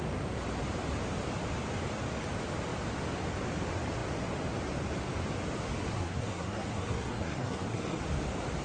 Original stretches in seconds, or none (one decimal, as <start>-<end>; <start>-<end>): 0.0-5.9; 8.0-8.6